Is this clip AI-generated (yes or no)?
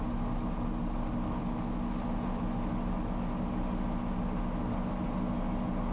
no